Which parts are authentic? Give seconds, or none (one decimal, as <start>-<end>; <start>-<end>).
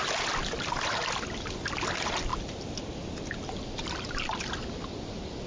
0.0-5.5